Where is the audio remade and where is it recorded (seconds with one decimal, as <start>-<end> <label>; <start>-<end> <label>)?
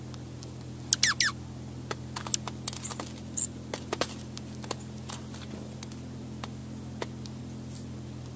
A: 0.0-8.4 recorded